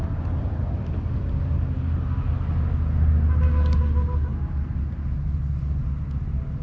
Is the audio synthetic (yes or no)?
no